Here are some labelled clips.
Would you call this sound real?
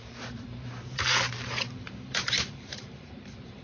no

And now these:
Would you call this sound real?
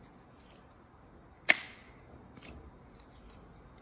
yes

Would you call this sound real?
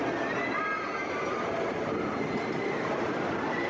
yes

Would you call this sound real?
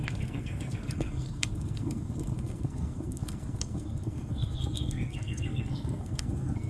no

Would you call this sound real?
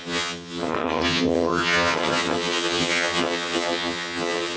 no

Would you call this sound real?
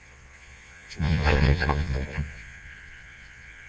no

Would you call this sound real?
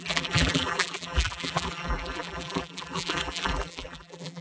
no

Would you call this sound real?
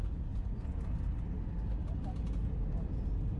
yes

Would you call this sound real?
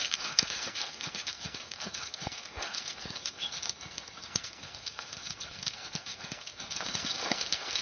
no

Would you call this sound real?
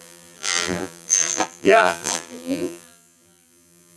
no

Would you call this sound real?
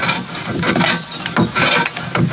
yes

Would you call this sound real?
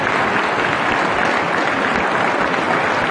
yes